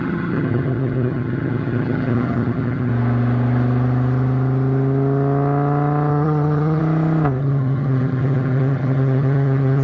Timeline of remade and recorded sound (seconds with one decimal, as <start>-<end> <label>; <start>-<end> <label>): 0.0-2.9 remade; 2.9-6.1 recorded; 6.1-6.8 remade; 6.8-7.4 recorded; 7.4-9.8 remade